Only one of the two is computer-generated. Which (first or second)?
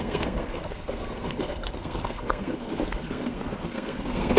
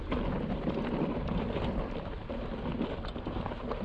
first